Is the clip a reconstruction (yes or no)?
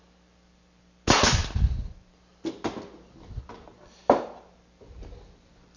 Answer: no